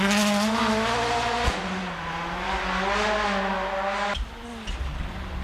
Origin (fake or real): real